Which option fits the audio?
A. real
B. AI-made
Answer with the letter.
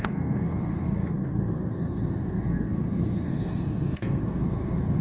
B